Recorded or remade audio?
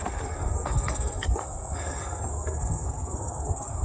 remade